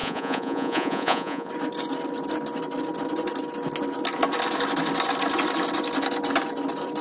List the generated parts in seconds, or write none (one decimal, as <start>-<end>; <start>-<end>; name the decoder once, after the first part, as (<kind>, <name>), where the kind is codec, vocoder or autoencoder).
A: 0.0-1.5 (vocoder, Vocos)